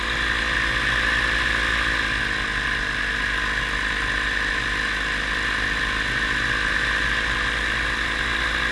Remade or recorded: recorded